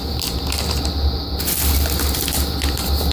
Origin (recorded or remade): recorded